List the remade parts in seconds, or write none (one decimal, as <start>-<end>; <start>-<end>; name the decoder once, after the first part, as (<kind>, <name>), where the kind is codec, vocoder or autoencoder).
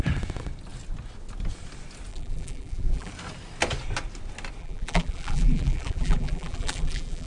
2.1-3.1 (vocoder, BigVGAN v2); 4.6-7.3